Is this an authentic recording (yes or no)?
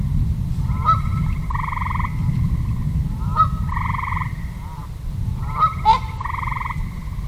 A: no